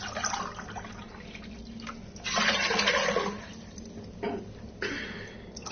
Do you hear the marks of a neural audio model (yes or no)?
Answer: no